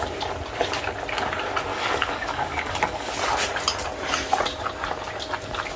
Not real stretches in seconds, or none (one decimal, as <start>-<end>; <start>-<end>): 1.7-3.1